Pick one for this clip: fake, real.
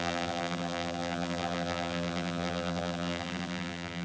fake